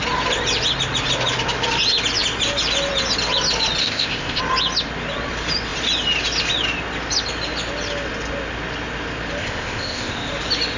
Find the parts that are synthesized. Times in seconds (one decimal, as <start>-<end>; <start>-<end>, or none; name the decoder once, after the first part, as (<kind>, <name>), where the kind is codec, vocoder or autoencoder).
3.8-4.4 (codec, ZipCodec); 9.4-10.3